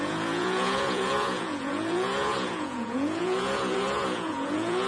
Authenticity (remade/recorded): remade